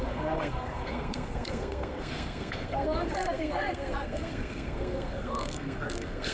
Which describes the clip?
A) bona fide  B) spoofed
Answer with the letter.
B